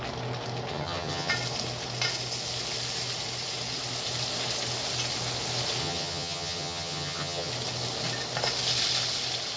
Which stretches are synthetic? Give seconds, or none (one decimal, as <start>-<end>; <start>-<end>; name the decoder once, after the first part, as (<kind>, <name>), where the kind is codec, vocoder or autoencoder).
0.7-1.3 (vocoder, HiFi-GAN); 5.8-7.5